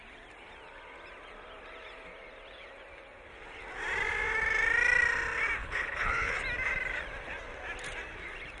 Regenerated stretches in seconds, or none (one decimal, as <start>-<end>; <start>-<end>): 5.6-6.3